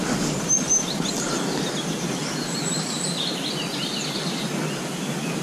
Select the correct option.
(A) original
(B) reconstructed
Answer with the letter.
A